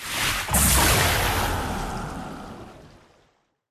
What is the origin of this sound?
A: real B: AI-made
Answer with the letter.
A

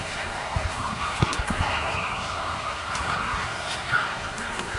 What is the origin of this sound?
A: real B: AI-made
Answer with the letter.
B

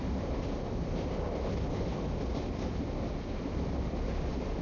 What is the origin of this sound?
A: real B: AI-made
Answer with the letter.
A